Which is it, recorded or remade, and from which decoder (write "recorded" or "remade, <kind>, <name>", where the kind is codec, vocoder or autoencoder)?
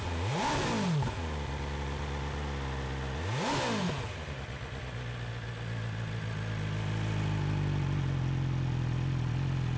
recorded